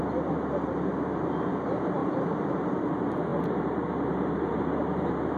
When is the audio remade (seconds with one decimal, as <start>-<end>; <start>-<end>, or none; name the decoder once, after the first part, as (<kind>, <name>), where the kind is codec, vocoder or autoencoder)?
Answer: 2.0-2.9 (vocoder, BigVGAN v2)